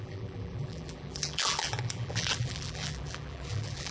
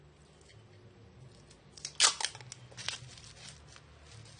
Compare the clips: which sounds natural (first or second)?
second